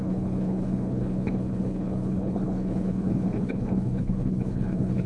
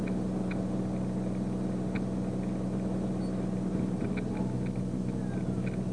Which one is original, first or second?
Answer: second